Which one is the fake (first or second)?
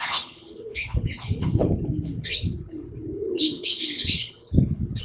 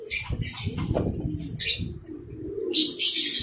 first